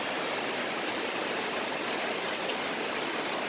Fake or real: real